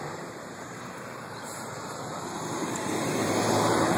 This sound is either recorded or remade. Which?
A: remade